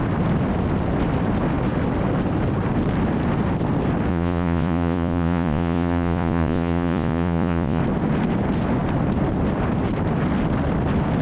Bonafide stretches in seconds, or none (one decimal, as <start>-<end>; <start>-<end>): 0.0-4.1; 7.8-11.2